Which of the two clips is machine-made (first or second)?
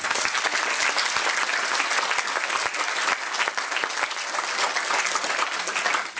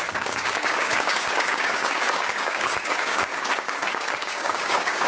second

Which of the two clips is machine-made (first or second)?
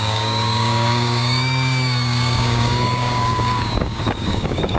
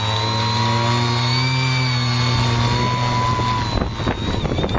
first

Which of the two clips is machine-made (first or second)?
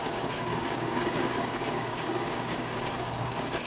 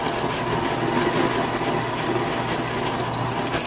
first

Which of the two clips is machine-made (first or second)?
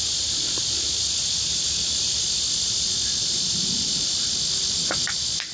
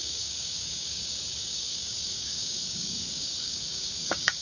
second